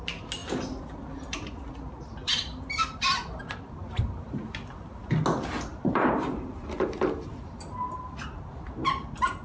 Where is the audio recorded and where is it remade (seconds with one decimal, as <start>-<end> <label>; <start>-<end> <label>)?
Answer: 0.0-0.4 recorded; 0.4-1.7 remade; 1.7-2.2 recorded; 2.2-4.0 remade; 4.0-5.7 recorded; 5.7-8.7 remade; 8.7-9.4 recorded